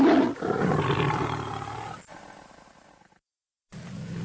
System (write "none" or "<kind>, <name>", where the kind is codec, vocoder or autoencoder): none